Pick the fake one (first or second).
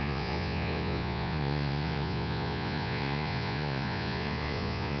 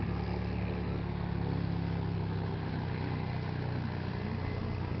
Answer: first